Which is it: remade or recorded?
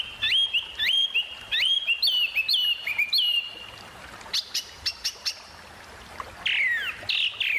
recorded